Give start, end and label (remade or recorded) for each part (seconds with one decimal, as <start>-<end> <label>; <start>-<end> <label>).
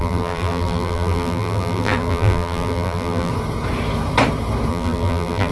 0.0-3.3 remade; 3.3-4.7 recorded; 4.7-5.5 remade